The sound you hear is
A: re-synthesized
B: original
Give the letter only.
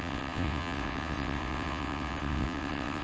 A